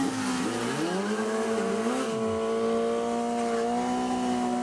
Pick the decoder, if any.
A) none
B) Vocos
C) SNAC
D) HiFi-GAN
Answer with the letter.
A